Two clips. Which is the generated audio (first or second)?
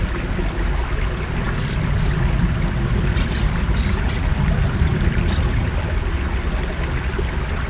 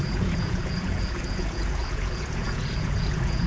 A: second